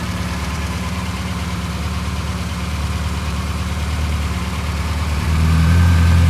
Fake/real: fake